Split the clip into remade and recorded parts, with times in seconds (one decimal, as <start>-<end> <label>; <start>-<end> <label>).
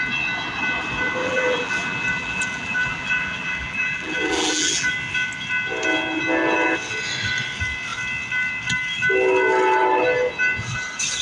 0.0-1.2 recorded; 1.2-4.9 remade; 4.9-11.2 recorded